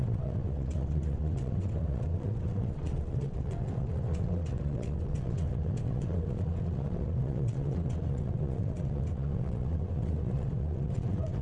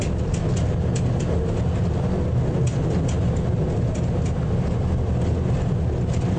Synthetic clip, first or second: first